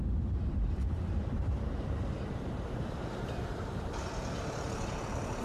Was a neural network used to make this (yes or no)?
yes